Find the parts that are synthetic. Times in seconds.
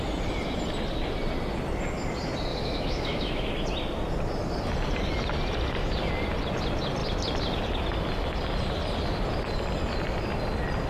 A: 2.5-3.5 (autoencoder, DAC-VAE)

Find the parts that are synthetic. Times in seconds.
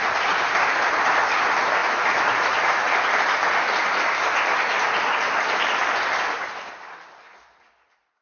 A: none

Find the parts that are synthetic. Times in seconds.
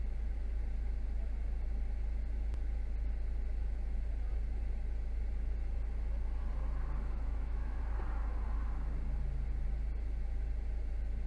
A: 7.0-7.8 (autoencoder, DAC-VAE)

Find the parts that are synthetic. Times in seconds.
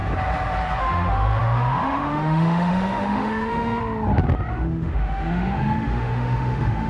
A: 0.8-3.8 (autoencoder, DAC-VAE); 4.5-6.9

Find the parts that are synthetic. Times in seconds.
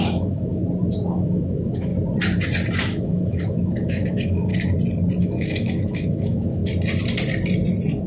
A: 0.0-0.6 (autoencoder, DAC-VAE); 1.1-1.9; 2.8-4.5; 5.2-6.6